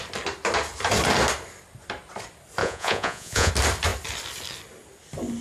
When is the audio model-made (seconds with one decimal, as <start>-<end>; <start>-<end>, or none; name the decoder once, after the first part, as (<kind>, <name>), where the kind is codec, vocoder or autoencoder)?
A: 2.6-3.5 (vocoder, Vocos)